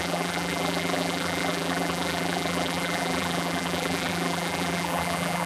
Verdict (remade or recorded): remade